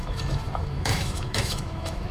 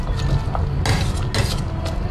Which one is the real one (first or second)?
second